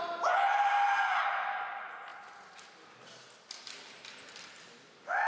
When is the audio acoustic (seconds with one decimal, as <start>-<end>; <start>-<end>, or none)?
0.0-5.3